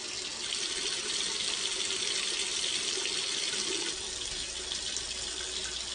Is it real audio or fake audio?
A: real